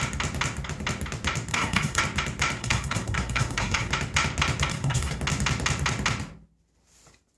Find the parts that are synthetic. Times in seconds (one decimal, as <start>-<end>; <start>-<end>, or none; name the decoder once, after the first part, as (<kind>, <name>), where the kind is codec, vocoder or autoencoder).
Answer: 1.5-2.0 (codec, SNAC); 2.6-3.9; 4.7-5.2